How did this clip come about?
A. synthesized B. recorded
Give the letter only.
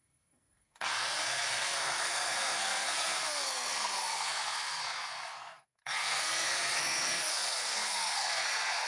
A